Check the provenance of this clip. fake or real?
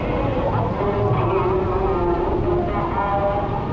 real